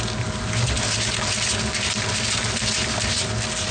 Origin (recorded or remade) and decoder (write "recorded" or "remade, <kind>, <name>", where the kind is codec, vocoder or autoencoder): recorded